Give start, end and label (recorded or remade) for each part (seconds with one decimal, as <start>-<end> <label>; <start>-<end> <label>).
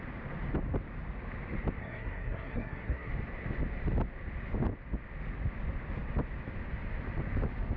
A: 0.0-1.8 recorded; 1.8-3.1 remade; 3.1-7.8 recorded